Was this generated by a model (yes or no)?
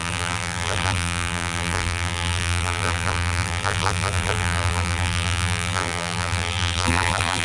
yes